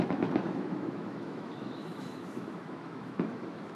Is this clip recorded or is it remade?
remade